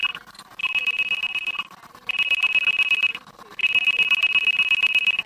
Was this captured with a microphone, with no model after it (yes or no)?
yes